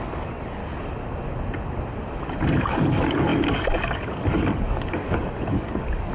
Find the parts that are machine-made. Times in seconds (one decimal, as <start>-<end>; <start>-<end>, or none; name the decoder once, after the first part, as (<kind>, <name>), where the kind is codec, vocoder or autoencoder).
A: 0.0-0.6 (codec, DAC); 2.6-6.1